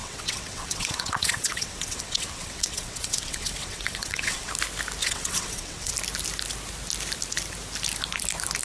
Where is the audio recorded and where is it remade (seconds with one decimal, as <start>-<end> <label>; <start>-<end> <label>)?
0.0-4.5 remade; 4.5-5.0 recorded; 5.0-5.9 remade; 5.9-8.6 recorded